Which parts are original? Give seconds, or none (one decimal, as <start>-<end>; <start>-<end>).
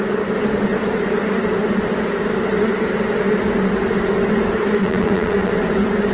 0.0-4.8; 5.5-6.1